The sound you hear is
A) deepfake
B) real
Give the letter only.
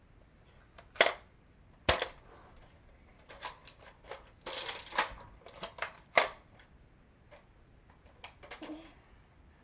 B